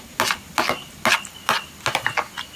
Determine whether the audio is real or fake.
real